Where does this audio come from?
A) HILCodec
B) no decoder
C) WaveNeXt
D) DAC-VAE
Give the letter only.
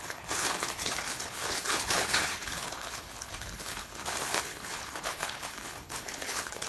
A